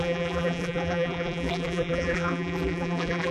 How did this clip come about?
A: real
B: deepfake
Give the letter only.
B